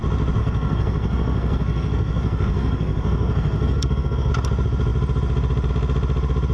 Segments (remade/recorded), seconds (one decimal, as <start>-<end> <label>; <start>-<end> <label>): 0.0-0.4 recorded; 0.4-4.3 remade; 4.3-6.5 recorded